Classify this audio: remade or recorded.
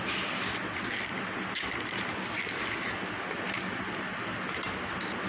recorded